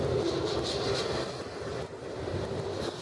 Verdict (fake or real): real